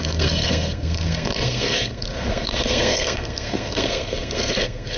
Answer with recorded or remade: remade